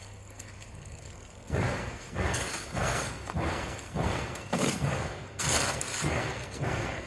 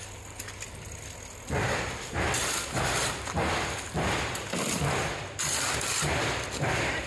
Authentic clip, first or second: second